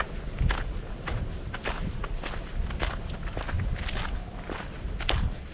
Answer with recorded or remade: recorded